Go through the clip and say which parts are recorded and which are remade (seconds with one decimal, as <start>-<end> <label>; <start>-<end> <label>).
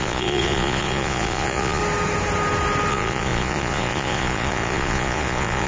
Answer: 0.0-1.8 remade; 1.8-2.9 recorded; 2.9-5.7 remade